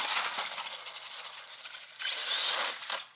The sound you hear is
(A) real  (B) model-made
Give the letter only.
A